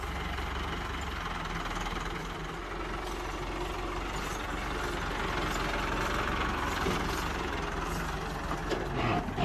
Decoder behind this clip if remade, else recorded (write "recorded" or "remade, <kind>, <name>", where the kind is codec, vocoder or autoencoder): recorded